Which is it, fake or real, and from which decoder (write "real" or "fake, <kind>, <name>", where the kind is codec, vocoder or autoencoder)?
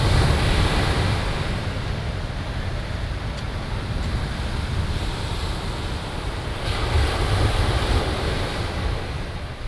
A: real